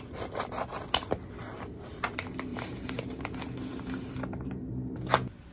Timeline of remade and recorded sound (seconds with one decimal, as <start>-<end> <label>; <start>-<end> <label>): 0.0-2.5 recorded; 2.5-3.2 remade; 3.2-3.7 recorded; 3.7-4.5 remade; 4.5-5.5 recorded